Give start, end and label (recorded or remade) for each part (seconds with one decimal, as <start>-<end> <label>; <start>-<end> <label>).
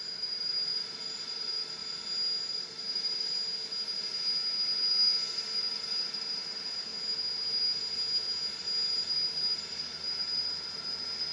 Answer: 0.0-1.8 remade; 1.8-2.5 recorded; 2.5-3.4 remade; 3.4-5.7 recorded; 5.7-6.9 remade; 6.9-9.1 recorded; 9.1-11.3 remade